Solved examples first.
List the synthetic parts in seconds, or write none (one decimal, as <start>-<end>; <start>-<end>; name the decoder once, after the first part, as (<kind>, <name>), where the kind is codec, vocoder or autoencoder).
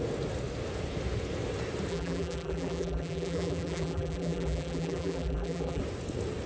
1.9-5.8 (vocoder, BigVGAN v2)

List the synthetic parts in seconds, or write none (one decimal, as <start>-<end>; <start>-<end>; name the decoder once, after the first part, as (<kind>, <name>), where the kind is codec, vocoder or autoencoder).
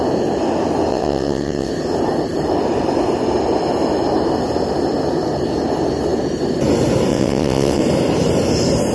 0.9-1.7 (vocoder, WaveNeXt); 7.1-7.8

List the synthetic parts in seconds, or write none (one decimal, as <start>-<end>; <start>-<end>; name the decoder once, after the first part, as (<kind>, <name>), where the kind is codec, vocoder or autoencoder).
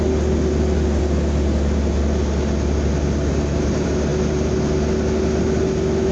none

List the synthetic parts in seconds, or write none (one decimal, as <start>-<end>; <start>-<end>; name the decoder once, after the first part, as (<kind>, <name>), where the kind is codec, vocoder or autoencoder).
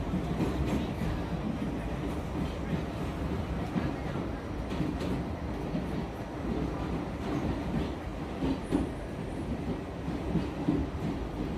none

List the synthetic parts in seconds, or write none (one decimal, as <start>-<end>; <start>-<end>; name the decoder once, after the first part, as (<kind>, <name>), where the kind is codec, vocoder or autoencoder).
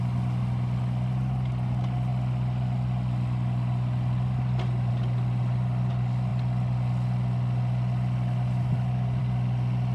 none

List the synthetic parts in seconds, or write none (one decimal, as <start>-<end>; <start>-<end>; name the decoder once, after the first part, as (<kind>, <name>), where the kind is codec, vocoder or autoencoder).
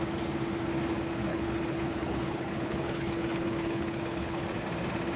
1.3-4.4 (codec, HILCodec)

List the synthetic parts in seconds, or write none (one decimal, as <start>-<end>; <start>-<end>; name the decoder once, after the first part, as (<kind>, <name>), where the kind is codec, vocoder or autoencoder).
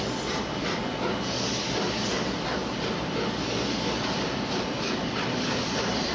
none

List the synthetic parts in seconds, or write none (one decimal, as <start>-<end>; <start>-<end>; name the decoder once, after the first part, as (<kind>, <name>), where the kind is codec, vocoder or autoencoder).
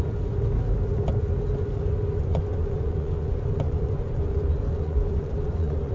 2.3-5.9 (vocoder, Vocos)